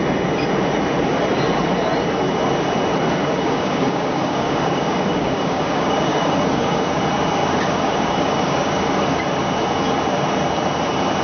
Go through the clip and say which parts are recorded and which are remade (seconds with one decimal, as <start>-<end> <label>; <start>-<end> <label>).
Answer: 0.0-3.2 recorded; 3.2-7.0 remade; 7.0-7.4 recorded; 7.4-9.2 remade; 9.2-11.2 recorded